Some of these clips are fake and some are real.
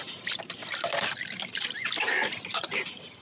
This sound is real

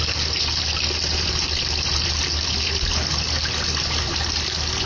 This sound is real